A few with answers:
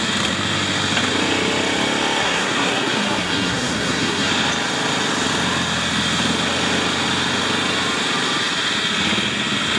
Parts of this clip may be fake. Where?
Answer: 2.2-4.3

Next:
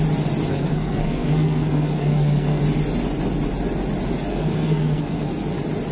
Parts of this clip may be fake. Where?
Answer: 0.5-2.6; 4.3-5.3

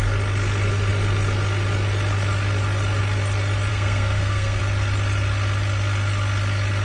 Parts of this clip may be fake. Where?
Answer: 3.7-4.6

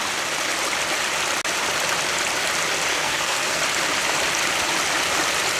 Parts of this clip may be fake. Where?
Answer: 2.9-3.6

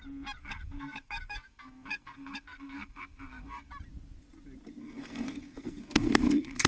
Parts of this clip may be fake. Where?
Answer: 0.4-3.7; 4.8-6.7

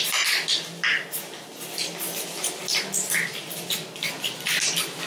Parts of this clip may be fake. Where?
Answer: none